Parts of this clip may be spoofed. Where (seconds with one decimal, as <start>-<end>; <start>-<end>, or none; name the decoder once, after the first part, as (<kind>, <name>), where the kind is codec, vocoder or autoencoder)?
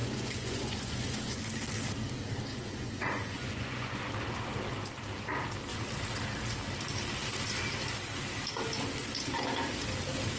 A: 0.0-1.4 (vocoder, Vocos); 2.5-4.1